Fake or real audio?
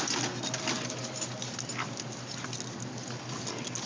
real